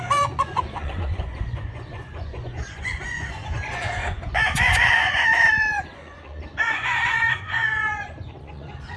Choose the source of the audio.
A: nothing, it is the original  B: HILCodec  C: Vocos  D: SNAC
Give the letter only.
C